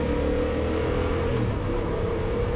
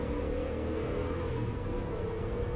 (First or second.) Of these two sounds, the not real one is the second